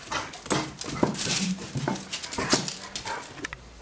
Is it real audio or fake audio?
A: real